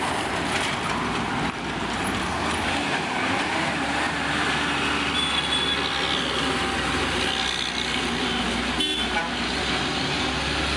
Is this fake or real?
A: real